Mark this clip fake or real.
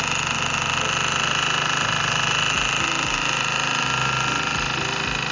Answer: real